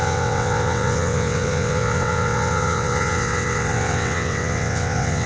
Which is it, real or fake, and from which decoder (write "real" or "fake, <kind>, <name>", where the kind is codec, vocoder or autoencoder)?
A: fake, vocoder, WaveNeXt